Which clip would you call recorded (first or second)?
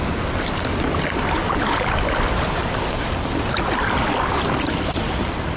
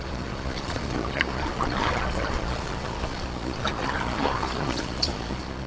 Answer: first